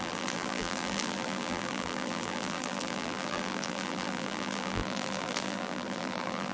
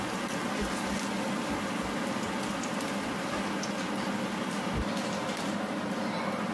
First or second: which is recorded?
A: second